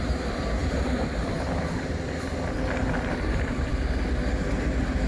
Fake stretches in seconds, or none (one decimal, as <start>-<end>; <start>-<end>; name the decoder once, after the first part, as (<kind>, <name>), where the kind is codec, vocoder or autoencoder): none